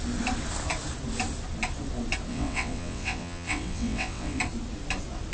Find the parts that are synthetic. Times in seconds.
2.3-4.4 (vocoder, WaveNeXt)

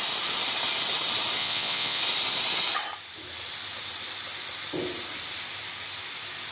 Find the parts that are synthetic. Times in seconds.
1.4-2.0 (vocoder, WaveNeXt)

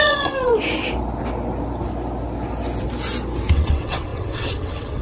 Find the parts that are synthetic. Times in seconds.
0.0-0.5 (vocoder, WaveNeXt); 3.5-5.0

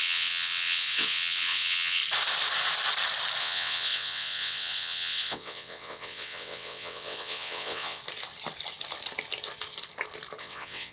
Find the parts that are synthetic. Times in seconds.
0.0-2.0 (vocoder, WaveNeXt); 3.4-8.0; 10.4-10.9